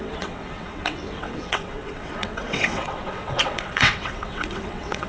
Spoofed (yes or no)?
yes